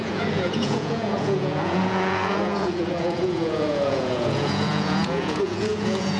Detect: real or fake fake